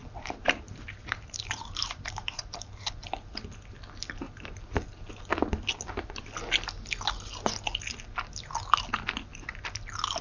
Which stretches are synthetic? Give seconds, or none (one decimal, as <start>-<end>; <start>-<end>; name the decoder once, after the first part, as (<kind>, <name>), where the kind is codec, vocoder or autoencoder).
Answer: 0.0-2.9 (vocoder, BigVGAN v2)